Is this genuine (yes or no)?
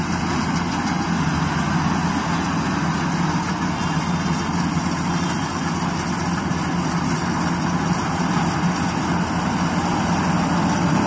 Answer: yes